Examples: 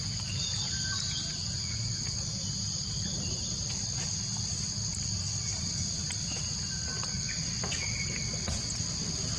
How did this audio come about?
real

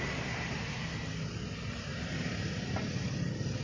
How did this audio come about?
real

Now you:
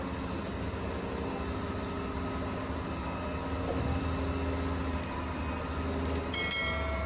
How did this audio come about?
real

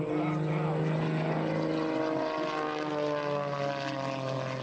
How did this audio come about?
real